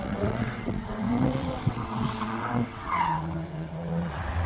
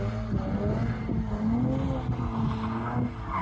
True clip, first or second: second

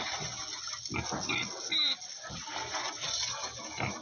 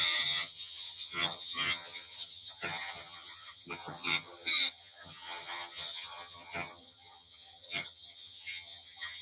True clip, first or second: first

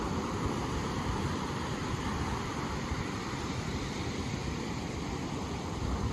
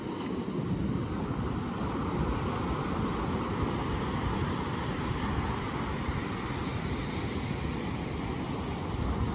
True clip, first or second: second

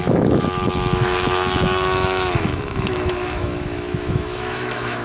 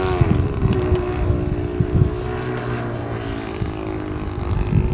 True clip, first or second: second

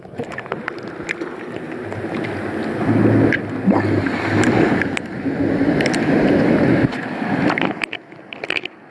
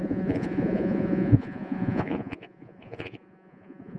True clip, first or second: first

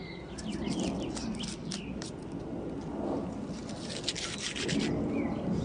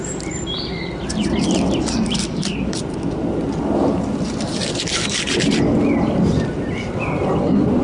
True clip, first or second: first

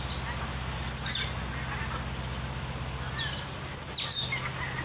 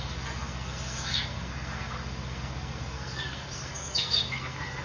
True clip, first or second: first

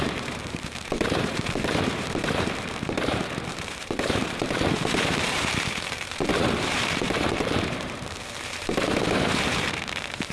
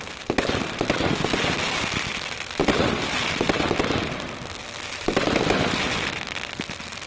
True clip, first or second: second